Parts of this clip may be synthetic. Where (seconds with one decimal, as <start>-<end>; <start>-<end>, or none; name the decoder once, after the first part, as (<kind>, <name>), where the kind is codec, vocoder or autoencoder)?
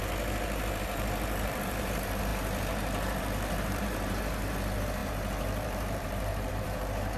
0.0-7.2 (vocoder, BigVGAN v2)